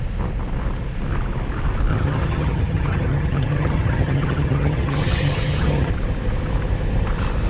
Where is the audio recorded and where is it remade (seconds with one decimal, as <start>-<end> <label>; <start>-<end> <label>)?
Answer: 0.0-1.9 recorded; 1.9-5.9 remade; 5.9-7.5 recorded